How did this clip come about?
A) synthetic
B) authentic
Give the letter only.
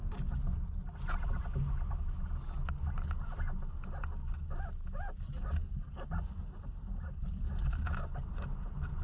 B